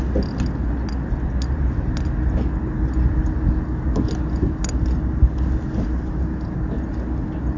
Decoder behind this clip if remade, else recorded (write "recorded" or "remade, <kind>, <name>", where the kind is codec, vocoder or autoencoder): recorded